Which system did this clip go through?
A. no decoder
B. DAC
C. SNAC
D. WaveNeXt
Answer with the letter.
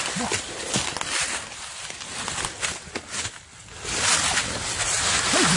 A